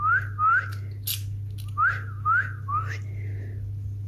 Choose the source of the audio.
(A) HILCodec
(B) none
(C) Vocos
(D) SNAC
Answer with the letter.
B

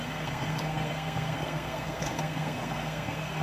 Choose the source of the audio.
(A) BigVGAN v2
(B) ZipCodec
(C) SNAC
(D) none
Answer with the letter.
C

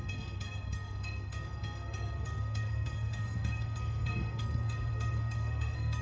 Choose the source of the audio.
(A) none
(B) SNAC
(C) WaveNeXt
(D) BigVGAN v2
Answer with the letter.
B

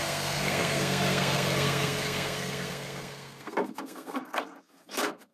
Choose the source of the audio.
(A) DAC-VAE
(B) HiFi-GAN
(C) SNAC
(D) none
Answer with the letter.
C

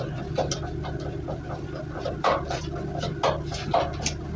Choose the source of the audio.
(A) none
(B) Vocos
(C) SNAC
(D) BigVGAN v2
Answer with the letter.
A